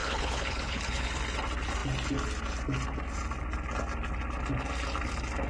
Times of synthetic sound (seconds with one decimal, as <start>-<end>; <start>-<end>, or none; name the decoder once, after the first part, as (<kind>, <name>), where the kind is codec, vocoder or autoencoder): 0.0-1.1 (codec, HILCodec)